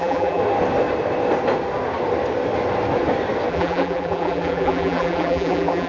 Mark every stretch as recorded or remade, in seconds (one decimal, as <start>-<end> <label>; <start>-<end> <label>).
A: 0.0-0.4 remade; 0.4-3.5 recorded; 3.5-5.9 remade